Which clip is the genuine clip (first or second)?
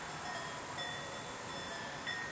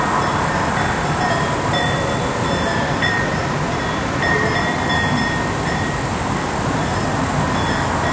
first